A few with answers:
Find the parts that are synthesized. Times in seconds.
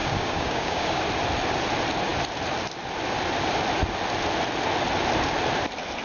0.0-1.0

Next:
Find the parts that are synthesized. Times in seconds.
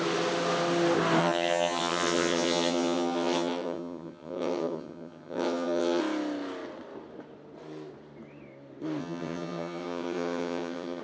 1.2-6.0; 9.0-11.0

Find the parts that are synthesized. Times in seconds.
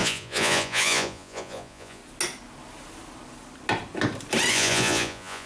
0.0-2.0; 4.5-5.5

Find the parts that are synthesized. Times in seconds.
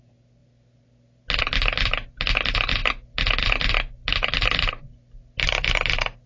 none